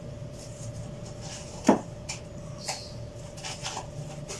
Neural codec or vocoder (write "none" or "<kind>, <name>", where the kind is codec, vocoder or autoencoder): none